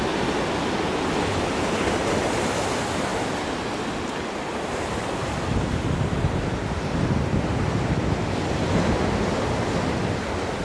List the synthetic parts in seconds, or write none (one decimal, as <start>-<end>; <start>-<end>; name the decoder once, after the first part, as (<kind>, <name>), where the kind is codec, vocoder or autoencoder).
none